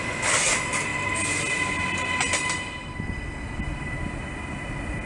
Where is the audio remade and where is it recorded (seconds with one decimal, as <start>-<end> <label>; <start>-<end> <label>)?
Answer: 0.0-5.1 recorded